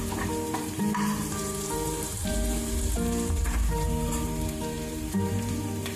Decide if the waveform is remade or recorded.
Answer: remade